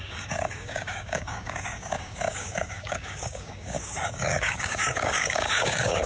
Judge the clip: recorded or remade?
remade